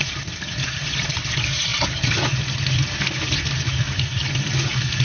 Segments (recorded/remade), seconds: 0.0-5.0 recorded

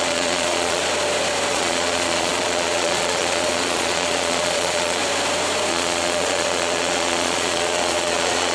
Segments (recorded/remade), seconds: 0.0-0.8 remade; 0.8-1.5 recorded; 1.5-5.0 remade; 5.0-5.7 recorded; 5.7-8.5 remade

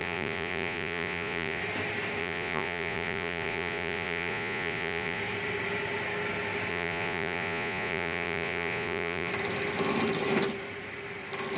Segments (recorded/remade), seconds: 0.0-1.6 remade; 1.6-2.2 recorded; 2.2-5.2 remade; 5.2-6.7 recorded; 6.7-9.3 remade; 9.3-11.6 recorded